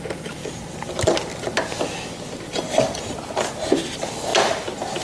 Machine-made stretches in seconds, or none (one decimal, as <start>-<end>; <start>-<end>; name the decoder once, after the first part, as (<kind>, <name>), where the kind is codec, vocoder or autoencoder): 2.5-3.1 (vocoder, BigVGAN v2)